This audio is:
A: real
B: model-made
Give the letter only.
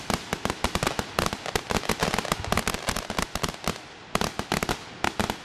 A